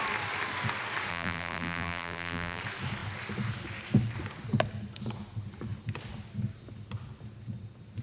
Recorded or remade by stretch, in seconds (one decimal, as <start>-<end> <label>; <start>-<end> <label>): 0.0-1.1 recorded; 1.1-2.6 remade; 2.6-8.0 recorded